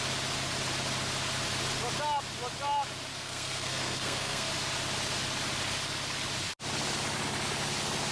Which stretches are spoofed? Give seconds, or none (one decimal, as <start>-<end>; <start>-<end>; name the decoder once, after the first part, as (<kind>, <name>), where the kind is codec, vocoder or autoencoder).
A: 3.1-4.5 (codec, SNAC)